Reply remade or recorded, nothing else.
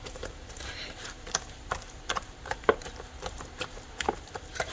remade